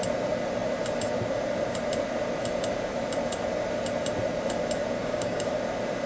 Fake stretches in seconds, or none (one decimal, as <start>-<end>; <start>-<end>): 5.0-5.5